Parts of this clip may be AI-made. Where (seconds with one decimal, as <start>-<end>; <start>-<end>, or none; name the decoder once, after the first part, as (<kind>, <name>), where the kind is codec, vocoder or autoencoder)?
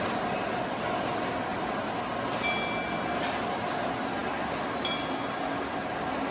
none